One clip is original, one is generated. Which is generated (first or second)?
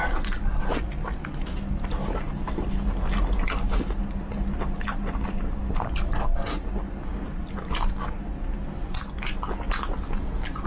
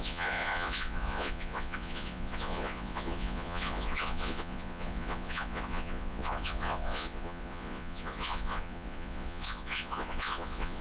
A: second